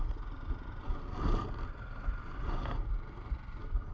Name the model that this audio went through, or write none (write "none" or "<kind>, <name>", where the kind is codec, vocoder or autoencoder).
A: none